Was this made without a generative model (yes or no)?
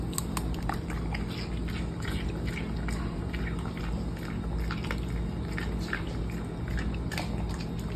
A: yes